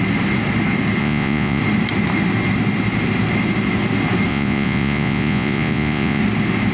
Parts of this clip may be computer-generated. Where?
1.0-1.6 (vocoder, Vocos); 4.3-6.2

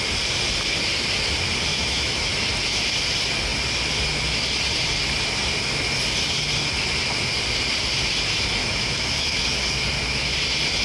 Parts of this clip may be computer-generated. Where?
1.7-2.3 (autoencoder, DAC-VAE); 8.6-9.4

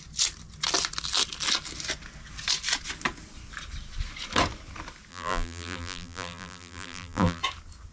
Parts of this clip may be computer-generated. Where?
5.1-7.4 (vocoder, BigVGAN v2)

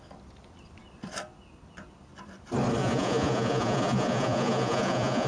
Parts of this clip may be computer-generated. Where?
2.8-5.3 (vocoder, Vocos)

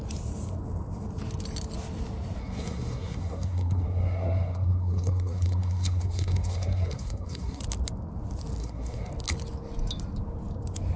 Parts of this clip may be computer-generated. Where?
2.4-7.6 (codec, SNAC); 8.6-9.1

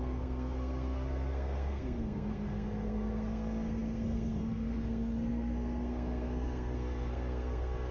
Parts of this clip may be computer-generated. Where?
0.0-7.9 (codec, SNAC)

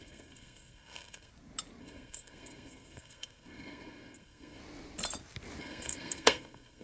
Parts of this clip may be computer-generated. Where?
0.0-1.3 (codec, SNAC); 1.8-4.6; 5.6-6.8